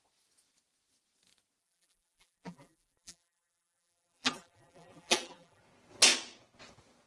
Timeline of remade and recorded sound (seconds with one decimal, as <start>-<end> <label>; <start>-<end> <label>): 0.0-1.6 recorded; 1.6-5.6 remade; 5.6-7.1 recorded